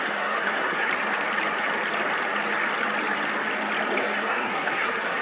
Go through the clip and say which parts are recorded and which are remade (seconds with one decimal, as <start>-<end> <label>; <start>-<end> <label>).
0.0-0.9 remade; 0.9-4.0 recorded; 4.0-5.2 remade